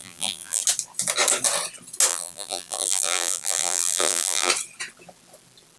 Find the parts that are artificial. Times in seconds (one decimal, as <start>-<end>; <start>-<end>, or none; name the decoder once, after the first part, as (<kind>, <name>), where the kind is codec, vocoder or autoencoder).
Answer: 0.0-0.6 (vocoder, BigVGAN v2); 2.1-4.5